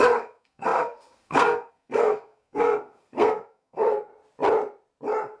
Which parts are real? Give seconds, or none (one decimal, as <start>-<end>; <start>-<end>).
4.1-5.4

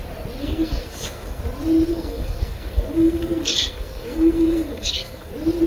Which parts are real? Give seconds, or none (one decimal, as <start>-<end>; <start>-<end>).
0.0-0.4; 1.4-1.9; 5.3-5.7

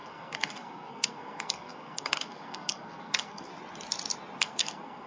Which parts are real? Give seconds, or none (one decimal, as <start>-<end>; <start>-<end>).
3.5-4.4

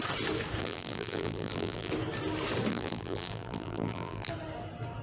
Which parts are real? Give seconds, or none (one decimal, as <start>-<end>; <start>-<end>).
0.0-0.6; 1.9-2.7; 4.3-5.0

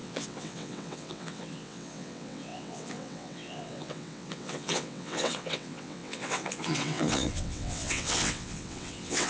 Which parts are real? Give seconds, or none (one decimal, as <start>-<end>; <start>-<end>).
none